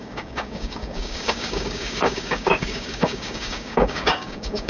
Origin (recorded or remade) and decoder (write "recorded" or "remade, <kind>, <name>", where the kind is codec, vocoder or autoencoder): remade, codec, DAC